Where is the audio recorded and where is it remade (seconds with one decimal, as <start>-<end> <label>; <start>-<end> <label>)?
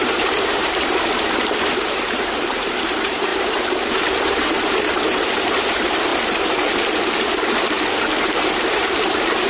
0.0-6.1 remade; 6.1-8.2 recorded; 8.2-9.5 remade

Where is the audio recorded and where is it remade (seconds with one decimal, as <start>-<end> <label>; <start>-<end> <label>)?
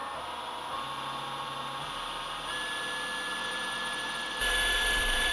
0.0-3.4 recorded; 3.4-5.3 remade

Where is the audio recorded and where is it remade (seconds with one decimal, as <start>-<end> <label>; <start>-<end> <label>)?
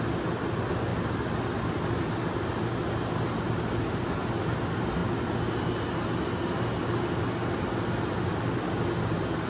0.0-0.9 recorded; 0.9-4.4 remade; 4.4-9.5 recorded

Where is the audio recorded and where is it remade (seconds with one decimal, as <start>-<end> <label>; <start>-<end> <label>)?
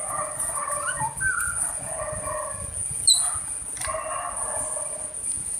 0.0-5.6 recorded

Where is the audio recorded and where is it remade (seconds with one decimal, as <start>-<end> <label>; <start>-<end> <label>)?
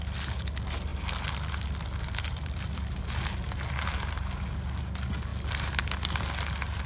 0.0-0.9 recorded; 0.9-3.0 remade; 3.0-6.9 recorded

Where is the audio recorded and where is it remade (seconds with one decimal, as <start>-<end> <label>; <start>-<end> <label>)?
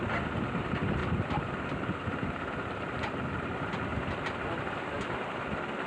0.0-1.0 recorded; 1.0-3.3 remade; 3.3-5.9 recorded